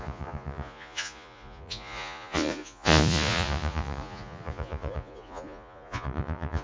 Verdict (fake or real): fake